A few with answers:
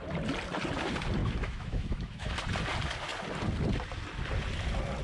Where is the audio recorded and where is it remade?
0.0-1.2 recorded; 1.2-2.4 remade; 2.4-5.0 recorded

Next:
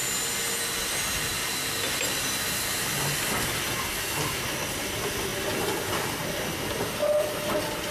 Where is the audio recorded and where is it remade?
0.0-7.9 recorded

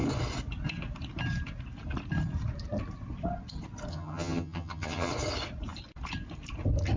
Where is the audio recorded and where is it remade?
0.0-3.9 recorded; 3.9-5.1 remade; 5.1-7.0 recorded

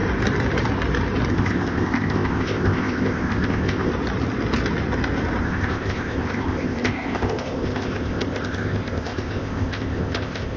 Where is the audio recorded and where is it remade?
0.0-1.3 recorded; 1.3-3.9 remade; 3.9-5.4 recorded; 5.4-10.6 remade

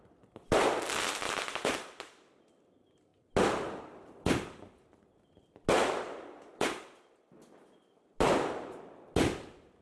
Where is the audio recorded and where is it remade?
0.0-9.8 recorded

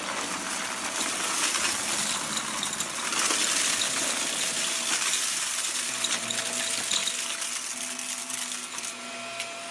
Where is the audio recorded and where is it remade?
0.0-9.7 recorded